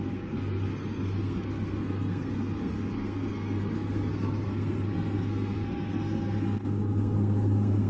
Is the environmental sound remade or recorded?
remade